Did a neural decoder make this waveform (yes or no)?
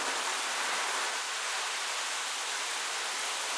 no